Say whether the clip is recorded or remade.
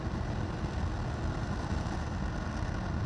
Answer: recorded